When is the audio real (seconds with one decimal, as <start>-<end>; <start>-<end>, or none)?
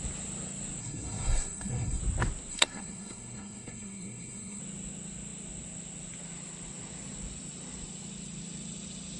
0.0-0.8; 2.0-2.5; 4.6-9.2